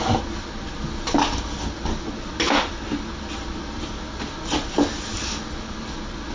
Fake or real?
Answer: real